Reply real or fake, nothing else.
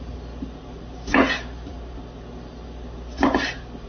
real